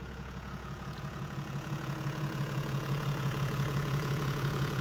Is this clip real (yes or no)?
no